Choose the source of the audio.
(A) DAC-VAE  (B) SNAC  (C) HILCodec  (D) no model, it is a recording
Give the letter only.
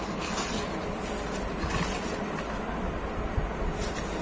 D